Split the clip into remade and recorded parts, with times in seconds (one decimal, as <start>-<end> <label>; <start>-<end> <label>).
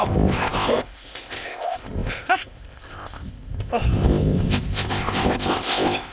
0.0-6.1 remade